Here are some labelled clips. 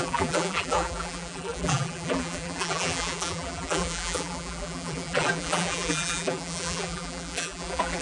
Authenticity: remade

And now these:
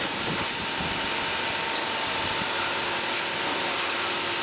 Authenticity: recorded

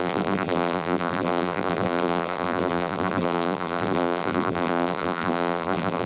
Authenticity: remade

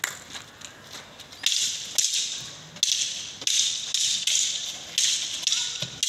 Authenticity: recorded